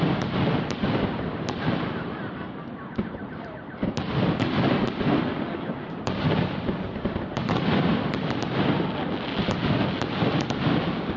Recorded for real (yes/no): yes